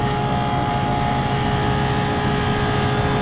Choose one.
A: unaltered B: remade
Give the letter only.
A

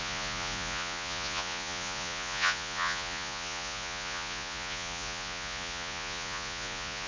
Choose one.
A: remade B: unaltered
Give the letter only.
A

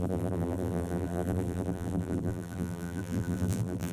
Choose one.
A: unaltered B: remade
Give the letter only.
B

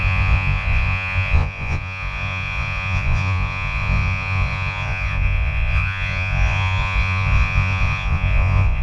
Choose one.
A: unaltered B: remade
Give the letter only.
B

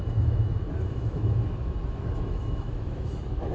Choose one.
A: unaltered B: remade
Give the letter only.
B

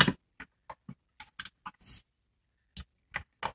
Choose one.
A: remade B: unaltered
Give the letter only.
B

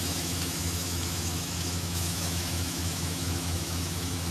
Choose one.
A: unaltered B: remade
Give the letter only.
B